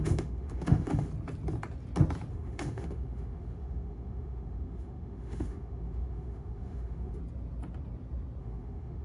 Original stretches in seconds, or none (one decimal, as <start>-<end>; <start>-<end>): 1.1-2.3; 7.2-8.4